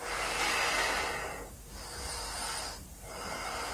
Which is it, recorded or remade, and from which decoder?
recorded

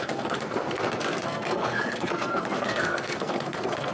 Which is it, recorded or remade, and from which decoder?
remade, codec, SNAC